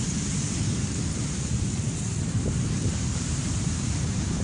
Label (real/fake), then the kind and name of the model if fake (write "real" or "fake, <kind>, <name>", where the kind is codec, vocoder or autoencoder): fake, vocoder, BigVGAN v2